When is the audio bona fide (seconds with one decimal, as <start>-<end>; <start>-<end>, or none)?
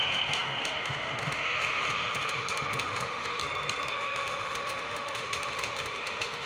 3.4-3.9